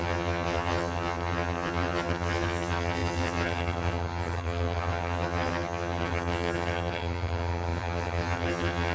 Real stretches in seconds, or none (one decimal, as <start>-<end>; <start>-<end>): none

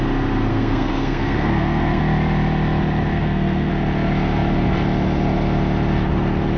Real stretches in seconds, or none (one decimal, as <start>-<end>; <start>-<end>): 0.0-0.5; 2.0-3.1; 3.7-6.6